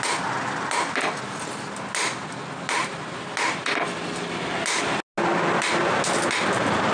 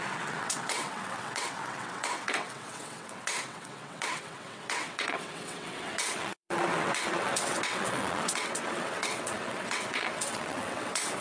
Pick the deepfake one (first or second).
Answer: second